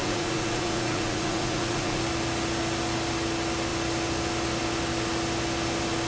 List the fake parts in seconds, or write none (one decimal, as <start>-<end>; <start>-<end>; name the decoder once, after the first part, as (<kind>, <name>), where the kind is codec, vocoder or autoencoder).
0.0-2.0 (vocoder, Vocos)